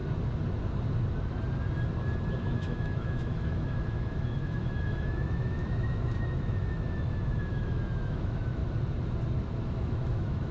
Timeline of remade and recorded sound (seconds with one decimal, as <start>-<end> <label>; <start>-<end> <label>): 0.0-2.4 recorded; 2.4-8.6 remade; 8.6-9.7 recorded; 9.7-10.5 remade